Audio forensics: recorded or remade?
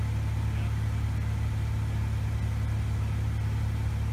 recorded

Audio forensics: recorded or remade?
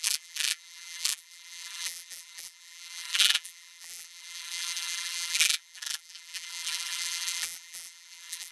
remade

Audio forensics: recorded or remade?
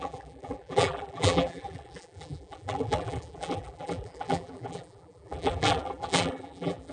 remade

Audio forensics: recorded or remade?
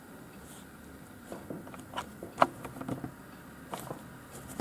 recorded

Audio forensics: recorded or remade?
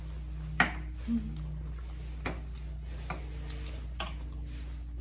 recorded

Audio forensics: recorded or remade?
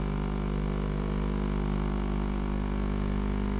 recorded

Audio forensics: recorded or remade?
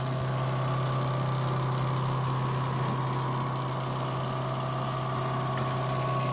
recorded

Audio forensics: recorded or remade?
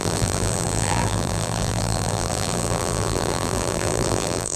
remade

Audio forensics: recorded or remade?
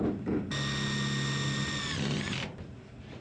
recorded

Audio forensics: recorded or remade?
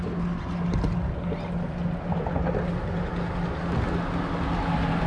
recorded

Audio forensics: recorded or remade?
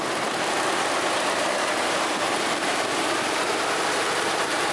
remade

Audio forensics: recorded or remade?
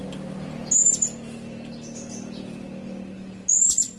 recorded